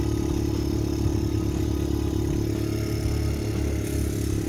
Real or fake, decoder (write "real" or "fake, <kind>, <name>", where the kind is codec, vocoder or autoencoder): real